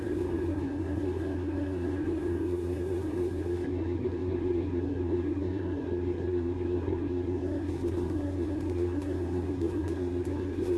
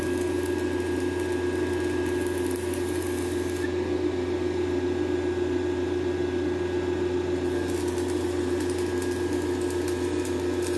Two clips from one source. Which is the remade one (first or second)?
first